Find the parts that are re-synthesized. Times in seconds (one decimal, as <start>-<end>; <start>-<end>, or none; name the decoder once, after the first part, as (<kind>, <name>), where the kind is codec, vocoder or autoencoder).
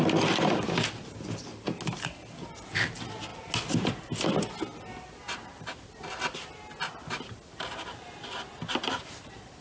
none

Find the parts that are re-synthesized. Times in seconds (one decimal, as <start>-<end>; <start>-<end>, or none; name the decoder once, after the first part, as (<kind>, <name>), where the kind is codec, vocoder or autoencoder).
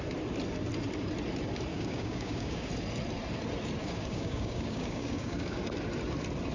1.7-2.7 (codec, DAC); 3.8-5.6